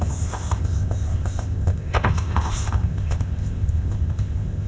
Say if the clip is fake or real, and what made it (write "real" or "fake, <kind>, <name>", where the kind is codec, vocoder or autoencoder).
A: fake, codec, ZipCodec